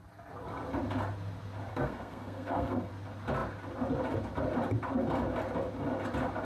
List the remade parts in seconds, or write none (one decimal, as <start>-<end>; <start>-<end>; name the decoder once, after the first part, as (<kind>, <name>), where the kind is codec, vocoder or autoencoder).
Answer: 1.7-2.9 (codec, SNAC)

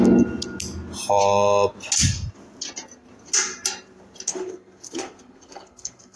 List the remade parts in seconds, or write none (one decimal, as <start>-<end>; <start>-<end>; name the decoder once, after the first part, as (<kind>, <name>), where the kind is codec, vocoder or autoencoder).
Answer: 4.3-6.2 (codec, SNAC)

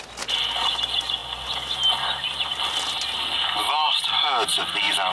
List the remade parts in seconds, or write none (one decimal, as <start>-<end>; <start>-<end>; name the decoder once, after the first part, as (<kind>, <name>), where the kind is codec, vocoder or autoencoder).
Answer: none